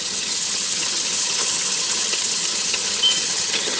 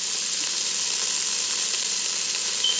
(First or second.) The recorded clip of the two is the second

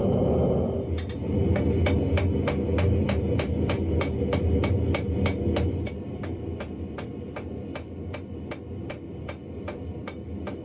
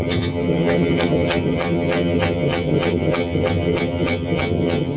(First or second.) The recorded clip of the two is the first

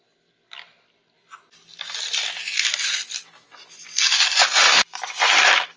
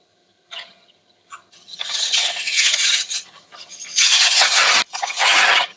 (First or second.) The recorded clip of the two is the first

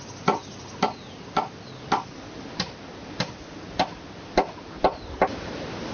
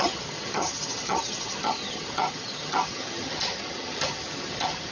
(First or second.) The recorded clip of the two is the first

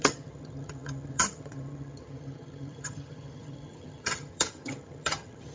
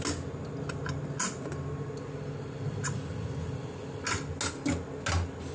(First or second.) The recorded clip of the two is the second